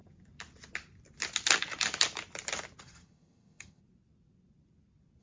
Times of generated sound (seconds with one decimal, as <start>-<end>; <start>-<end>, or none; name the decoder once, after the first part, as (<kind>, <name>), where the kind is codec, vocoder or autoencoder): 2.8-3.8 (vocoder, HiFi-GAN)